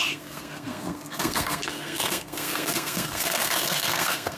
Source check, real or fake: fake